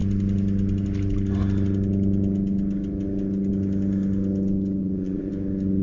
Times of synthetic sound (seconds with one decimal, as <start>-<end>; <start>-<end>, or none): 4.8-5.3